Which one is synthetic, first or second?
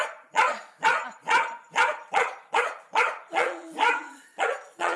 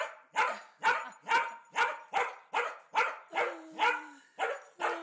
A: first